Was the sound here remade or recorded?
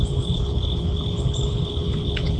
remade